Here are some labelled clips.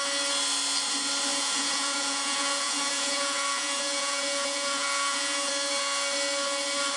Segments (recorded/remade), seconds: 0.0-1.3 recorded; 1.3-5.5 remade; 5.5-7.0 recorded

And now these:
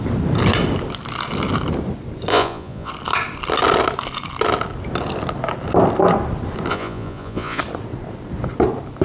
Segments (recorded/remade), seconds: 0.0-2.3 recorded; 2.3-2.9 remade; 2.9-6.7 recorded; 6.7-7.6 remade; 7.6-9.0 recorded

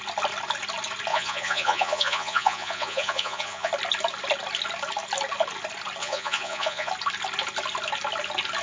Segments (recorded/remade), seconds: 0.0-1.1 recorded; 1.1-3.7 remade; 3.7-6.0 recorded; 6.0-6.9 remade; 6.9-8.6 recorded